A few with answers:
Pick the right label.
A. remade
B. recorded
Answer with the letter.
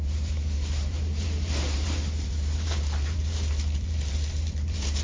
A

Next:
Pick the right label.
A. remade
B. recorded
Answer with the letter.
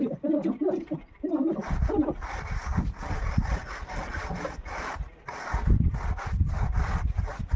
B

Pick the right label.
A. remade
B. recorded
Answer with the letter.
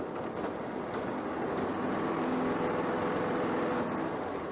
B